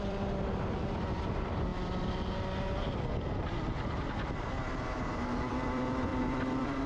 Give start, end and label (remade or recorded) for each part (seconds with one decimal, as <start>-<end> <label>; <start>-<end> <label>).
0.0-1.7 remade; 1.7-5.0 recorded; 5.0-6.9 remade